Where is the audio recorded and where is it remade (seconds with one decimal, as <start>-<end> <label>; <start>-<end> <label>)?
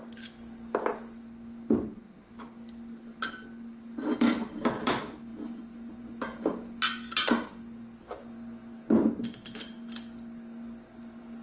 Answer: 0.0-11.4 recorded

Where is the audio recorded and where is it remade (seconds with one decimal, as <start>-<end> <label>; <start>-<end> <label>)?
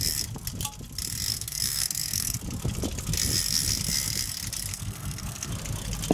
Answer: 0.0-1.3 recorded; 1.3-2.4 remade; 2.4-4.7 recorded; 4.7-5.5 remade; 5.5-6.1 recorded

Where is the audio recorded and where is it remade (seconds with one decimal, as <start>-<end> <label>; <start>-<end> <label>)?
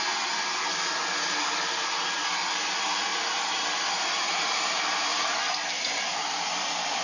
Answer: 0.0-7.0 recorded